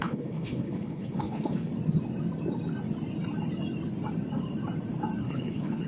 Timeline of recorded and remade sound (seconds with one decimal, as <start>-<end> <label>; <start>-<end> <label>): 0.0-1.7 remade; 1.7-5.2 recorded; 5.2-5.9 remade